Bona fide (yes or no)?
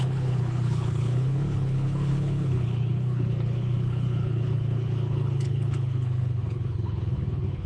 no